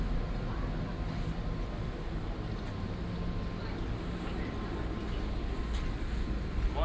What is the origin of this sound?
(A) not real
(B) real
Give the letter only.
B